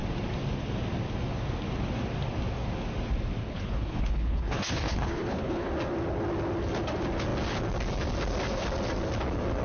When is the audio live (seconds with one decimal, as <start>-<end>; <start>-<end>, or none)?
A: 0.0-3.4; 5.7-9.6